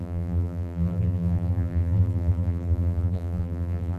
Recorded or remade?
remade